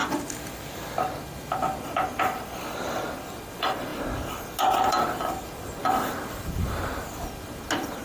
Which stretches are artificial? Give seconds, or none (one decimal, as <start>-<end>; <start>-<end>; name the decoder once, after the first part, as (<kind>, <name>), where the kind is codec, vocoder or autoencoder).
none